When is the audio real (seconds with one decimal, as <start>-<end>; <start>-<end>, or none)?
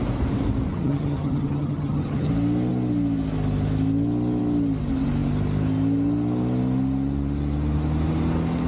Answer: 0.0-0.7; 2.3-8.7